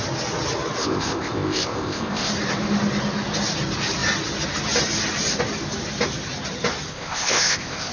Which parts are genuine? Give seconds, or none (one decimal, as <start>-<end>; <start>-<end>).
0.0-0.8; 2.3-6.9